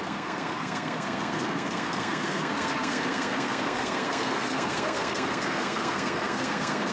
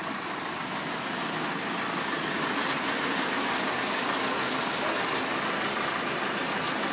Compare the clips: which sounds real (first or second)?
second